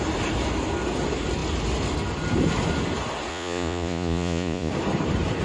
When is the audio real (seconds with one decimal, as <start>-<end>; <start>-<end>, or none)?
0.0-3.3; 4.7-5.4